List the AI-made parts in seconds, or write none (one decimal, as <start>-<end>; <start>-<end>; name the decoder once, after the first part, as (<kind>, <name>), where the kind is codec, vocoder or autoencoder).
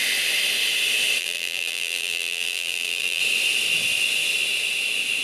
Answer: 1.2-3.2 (vocoder, BigVGAN v2)